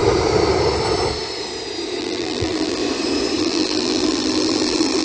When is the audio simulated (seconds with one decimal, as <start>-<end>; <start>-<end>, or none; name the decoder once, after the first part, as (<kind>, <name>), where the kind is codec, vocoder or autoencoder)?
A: 2.0-2.8 (vocoder, BigVGAN v2); 3.4-5.0